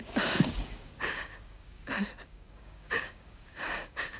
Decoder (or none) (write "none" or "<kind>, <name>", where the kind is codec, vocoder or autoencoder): codec, DAC